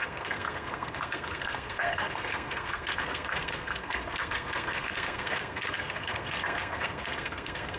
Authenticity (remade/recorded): remade